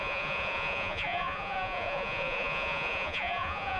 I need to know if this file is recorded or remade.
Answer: remade